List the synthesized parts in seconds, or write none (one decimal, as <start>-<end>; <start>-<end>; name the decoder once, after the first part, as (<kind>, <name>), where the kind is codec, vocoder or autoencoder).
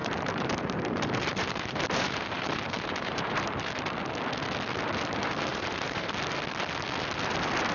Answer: 0.0-3.7 (vocoder, BigVGAN v2); 5.5-6.1